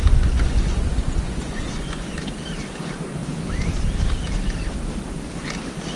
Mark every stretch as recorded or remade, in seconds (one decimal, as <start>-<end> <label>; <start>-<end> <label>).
0.0-2.1 remade; 2.1-6.0 recorded